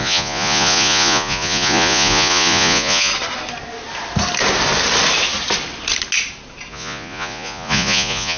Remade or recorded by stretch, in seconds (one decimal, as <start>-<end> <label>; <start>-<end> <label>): 0.0-3.1 remade; 3.1-6.7 recorded; 6.7-8.4 remade